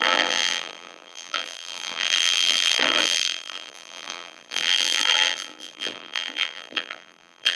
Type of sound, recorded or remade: remade